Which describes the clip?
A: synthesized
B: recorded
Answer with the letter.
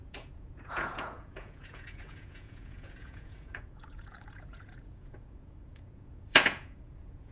A